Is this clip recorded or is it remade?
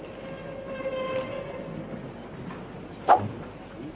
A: recorded